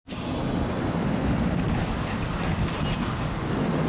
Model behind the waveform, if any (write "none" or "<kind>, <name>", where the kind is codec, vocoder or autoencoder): none